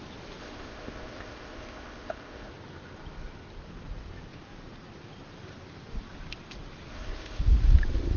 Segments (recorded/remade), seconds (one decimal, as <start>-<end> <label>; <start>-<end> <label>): 0.0-0.4 recorded; 0.4-2.5 remade; 2.5-6.9 recorded; 6.9-7.4 remade; 7.4-8.2 recorded